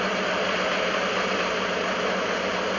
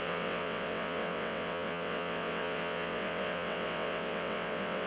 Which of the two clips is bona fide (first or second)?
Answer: first